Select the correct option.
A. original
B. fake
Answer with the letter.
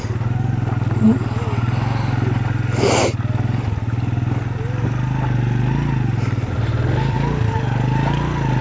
A